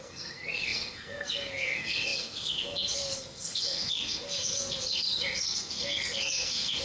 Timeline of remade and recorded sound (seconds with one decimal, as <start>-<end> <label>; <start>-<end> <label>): 0.0-6.8 remade